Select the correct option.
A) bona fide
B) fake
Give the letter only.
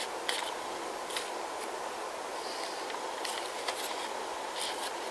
A